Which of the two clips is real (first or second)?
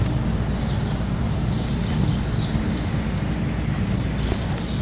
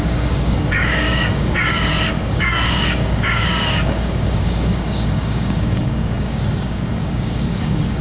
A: first